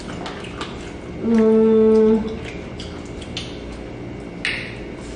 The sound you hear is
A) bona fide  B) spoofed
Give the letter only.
A